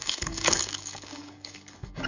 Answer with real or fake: fake